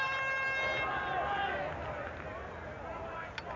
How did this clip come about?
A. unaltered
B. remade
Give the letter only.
A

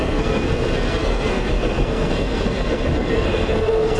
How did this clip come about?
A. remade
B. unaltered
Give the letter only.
A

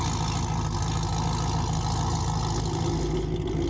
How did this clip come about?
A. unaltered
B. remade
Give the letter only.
A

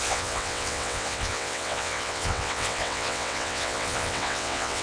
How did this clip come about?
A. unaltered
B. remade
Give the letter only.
B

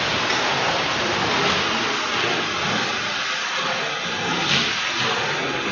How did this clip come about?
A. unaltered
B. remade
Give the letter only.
A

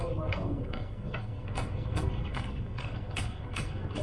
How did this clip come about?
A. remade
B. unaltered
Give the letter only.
A